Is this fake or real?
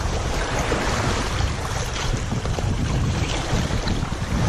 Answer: fake